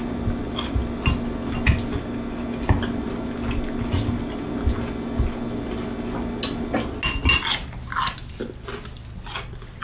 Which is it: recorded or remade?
recorded